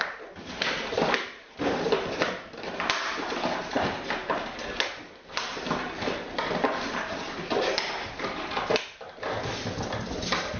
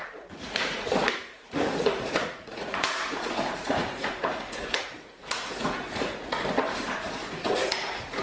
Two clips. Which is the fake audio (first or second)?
second